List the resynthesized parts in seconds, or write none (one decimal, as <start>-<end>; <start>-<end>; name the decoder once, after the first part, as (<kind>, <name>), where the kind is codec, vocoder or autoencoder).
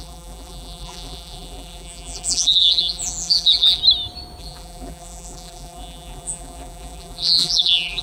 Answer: 0.0-3.8 (vocoder, BigVGAN v2); 4.4-8.0